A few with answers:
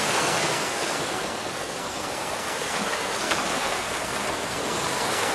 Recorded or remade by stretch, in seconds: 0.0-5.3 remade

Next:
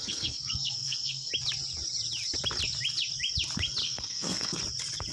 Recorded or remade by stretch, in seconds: 0.0-1.3 remade; 1.3-3.8 recorded; 3.8-4.6 remade; 4.6-5.1 recorded

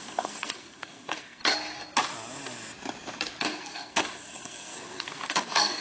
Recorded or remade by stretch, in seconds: 0.0-1.4 remade; 1.4-3.4 recorded; 3.4-5.8 remade

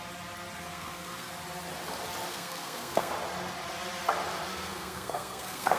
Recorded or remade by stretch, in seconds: 0.0-0.7 recorded; 0.7-1.3 remade; 1.3-2.3 recorded; 2.3-3.1 remade; 3.1-4.5 recorded; 4.5-5.8 remade

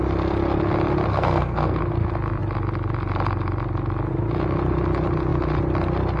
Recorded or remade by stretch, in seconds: 0.0-1.1 recorded; 1.1-1.8 remade; 1.8-6.2 recorded

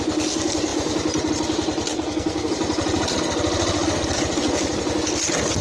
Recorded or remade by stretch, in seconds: 0.0-1.9 recorded; 1.9-2.5 remade; 2.5-5.6 recorded